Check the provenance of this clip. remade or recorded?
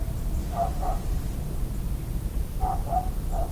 recorded